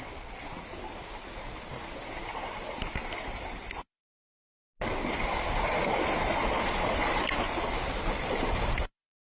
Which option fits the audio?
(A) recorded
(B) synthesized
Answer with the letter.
A